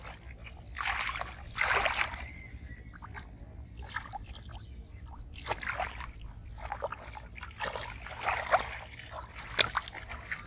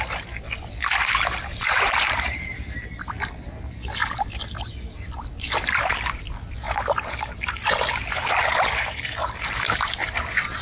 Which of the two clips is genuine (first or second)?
first